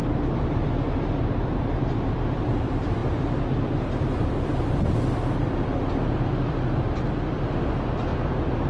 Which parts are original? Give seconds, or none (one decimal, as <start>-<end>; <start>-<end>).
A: 0.0-1.2; 3.0-4.3; 8.1-8.7